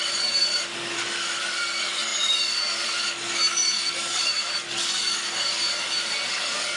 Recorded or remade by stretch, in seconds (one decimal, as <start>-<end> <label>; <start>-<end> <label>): 0.0-6.8 remade

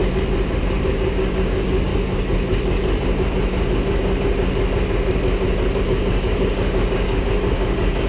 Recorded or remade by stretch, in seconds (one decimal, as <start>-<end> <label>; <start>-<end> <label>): 0.0-0.9 recorded; 0.9-1.9 remade; 1.9-5.8 recorded; 5.8-8.1 remade

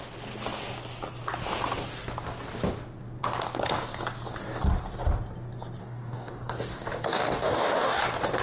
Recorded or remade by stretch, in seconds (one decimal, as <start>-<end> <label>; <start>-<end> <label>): 0.0-5.8 recorded; 5.8-8.0 remade; 8.0-8.4 recorded

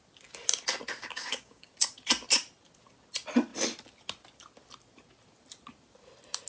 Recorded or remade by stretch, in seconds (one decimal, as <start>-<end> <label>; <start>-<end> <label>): 0.0-1.0 recorded; 1.0-1.7 remade; 1.7-6.5 recorded

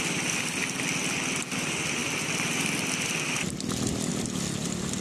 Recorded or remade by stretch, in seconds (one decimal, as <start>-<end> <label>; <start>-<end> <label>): 0.0-5.0 recorded